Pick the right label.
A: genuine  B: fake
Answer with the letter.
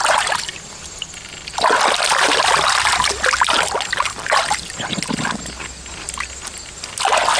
A